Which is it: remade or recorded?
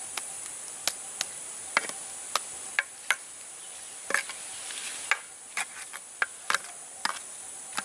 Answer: recorded